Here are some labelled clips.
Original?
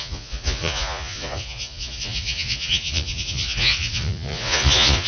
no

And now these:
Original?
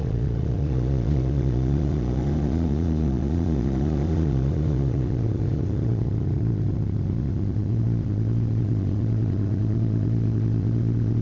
no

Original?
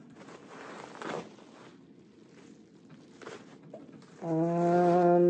yes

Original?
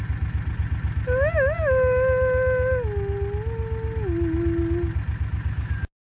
yes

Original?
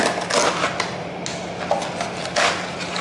yes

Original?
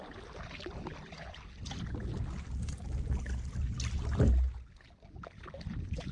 yes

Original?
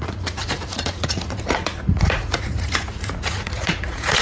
no